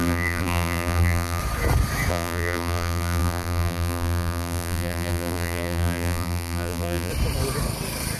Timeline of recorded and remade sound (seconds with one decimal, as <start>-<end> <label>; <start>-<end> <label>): 0.0-1.4 remade; 1.4-2.1 recorded; 2.1-7.1 remade; 7.1-8.2 recorded